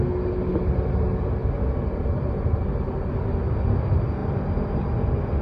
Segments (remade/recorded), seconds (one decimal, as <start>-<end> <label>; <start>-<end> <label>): 0.0-4.2 recorded; 4.2-4.8 remade; 4.8-5.4 recorded

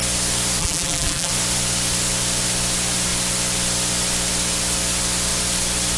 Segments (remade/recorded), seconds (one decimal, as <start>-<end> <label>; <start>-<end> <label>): 0.0-0.6 recorded; 0.6-1.3 remade; 1.3-6.0 recorded

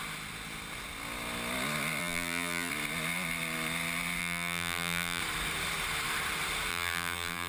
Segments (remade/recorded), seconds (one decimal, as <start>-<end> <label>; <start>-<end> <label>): 0.0-2.0 recorded; 2.0-2.7 remade; 2.7-4.2 recorded; 4.2-5.2 remade; 5.2-6.7 recorded; 6.7-7.5 remade

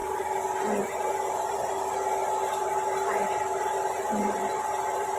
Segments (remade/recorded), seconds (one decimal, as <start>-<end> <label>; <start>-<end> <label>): 0.0-1.7 remade; 1.7-2.2 recorded; 2.2-5.2 remade

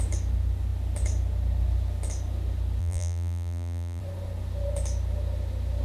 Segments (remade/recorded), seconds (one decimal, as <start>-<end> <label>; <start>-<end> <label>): 0.0-2.8 recorded; 2.8-4.0 remade; 4.0-5.8 recorded

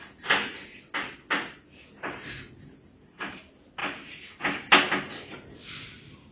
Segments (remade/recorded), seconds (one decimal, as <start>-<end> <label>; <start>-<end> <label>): 0.0-3.8 recorded; 3.8-4.4 remade; 4.4-6.3 recorded

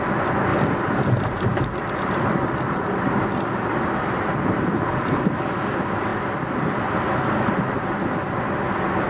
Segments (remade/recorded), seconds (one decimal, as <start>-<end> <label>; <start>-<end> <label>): 0.0-0.5 recorded; 0.5-5.3 remade; 5.3-9.1 recorded